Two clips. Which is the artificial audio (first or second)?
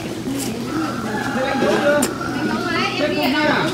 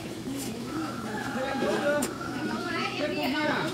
second